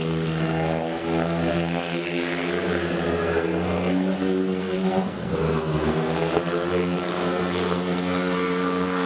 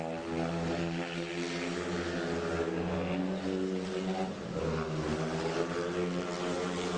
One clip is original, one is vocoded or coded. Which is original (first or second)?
second